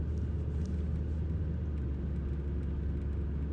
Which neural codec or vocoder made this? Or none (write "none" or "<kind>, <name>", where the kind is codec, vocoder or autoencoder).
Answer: none